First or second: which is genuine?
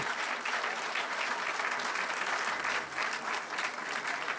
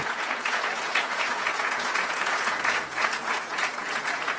first